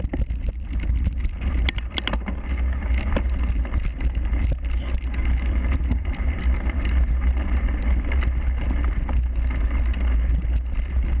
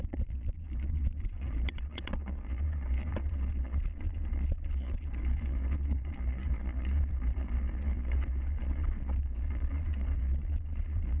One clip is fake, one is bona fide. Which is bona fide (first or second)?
first